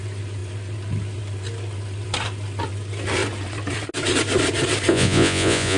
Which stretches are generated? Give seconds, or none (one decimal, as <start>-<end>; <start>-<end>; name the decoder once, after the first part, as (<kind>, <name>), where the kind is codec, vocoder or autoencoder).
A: 4.9-5.8 (vocoder, Vocos)